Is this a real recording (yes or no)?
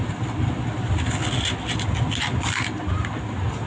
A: yes